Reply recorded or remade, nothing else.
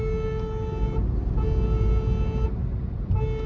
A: recorded